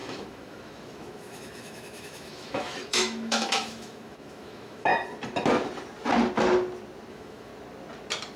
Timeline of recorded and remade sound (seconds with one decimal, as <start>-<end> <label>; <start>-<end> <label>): 0.0-4.9 remade; 4.9-7.1 recorded; 7.1-7.5 remade; 7.5-8.4 recorded